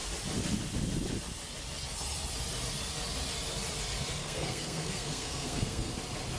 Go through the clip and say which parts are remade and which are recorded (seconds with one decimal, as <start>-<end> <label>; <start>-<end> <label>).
0.0-4.2 recorded; 4.2-5.9 remade; 5.9-6.4 recorded